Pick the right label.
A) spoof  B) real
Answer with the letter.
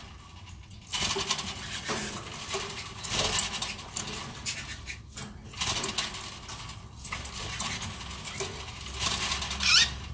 B